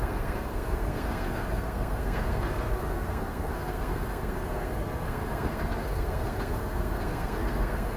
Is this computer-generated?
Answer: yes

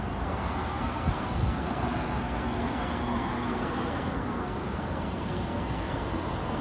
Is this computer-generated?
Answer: yes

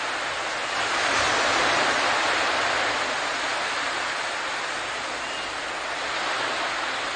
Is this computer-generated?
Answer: no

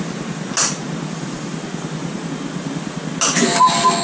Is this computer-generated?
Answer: no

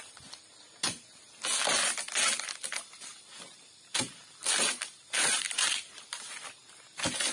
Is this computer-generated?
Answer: no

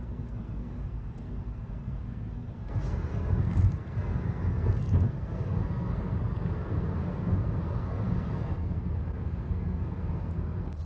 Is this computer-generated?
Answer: yes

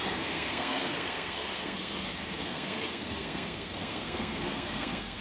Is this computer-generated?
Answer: yes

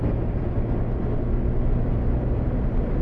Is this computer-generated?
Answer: no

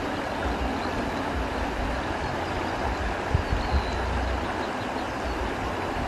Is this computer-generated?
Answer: no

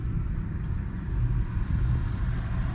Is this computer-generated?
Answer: no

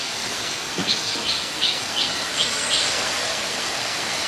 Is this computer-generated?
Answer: yes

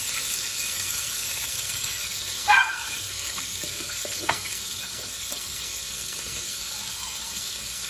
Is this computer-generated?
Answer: yes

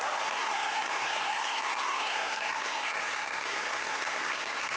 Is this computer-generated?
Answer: yes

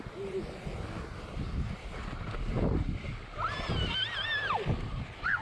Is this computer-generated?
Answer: no